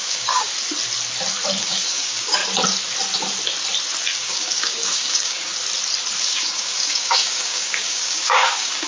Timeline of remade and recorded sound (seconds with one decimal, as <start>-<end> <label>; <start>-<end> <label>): 0.0-0.5 remade; 0.5-1.6 recorded; 1.6-2.4 remade; 2.4-4.2 recorded; 4.2-5.5 remade; 5.5-6.2 recorded; 6.2-8.9 remade

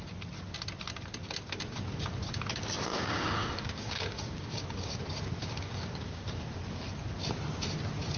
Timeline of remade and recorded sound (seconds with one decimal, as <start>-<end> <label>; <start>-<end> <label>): 0.0-2.9 recorded; 2.9-5.0 remade; 5.0-5.4 recorded; 5.4-6.4 remade; 6.4-8.2 recorded